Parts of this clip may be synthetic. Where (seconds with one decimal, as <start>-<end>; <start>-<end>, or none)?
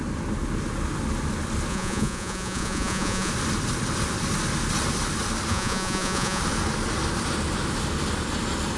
1.7-3.3; 5.5-6.4